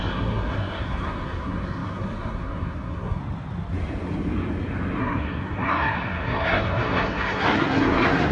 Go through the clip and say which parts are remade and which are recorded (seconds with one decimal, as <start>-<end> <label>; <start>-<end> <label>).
0.0-3.2 remade; 3.2-5.0 recorded; 5.0-8.3 remade